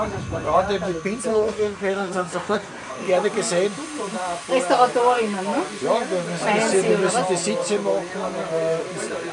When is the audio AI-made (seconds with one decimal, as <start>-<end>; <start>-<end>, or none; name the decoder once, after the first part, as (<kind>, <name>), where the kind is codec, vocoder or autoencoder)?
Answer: 1.3-2.9 (codec, SNAC)